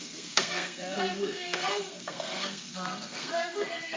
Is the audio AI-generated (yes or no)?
yes